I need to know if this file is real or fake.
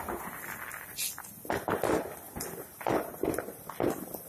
real